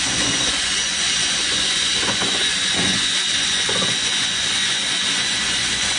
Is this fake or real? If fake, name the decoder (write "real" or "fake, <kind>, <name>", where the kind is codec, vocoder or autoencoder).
fake, vocoder, Vocos